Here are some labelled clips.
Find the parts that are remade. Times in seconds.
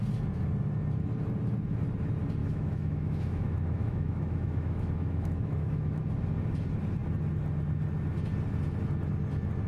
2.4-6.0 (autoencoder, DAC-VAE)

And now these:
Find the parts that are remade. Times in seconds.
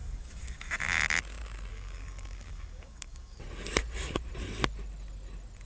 0.0-0.7 (codec, DAC); 1.7-3.4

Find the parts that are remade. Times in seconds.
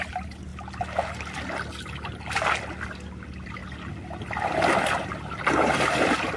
none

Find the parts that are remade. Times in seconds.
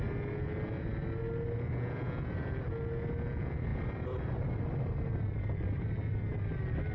3.7-6.3 (vocoder, BigVGAN v2)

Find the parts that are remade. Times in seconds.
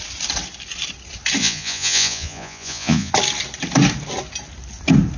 1.4-3.1 (vocoder, Vocos)